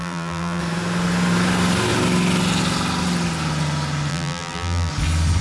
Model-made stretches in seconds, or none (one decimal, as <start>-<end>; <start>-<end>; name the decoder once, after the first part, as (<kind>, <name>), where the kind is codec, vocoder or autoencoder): 0.0-0.6 (vocoder, BigVGAN v2); 4.1-4.9